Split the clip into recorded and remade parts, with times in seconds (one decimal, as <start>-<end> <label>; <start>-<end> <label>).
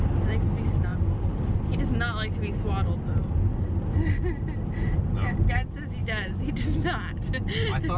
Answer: 0.0-8.0 recorded